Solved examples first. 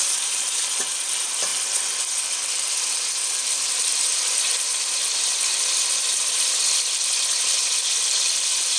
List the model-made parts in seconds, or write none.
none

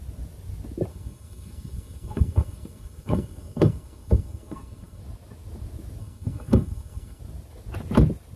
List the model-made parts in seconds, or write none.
0.9-5.0 (codec, SNAC); 6.0-7.2

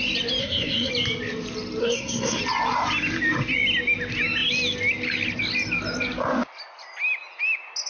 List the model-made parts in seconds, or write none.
0.4-0.9 (codec, SNAC); 1.8-2.4

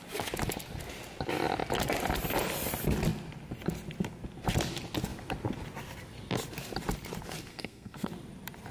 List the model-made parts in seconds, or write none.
7.5-8.1 (codec, SNAC)

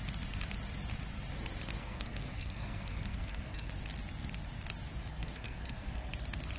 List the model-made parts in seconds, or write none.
1.8-3.7 (codec, SNAC); 5.1-6.1

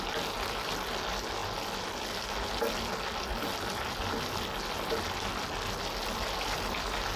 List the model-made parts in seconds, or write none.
none

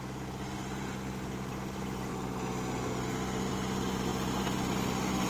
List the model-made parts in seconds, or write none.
none

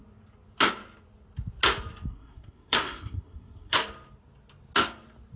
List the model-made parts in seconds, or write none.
2.1-3.7 (codec, SNAC)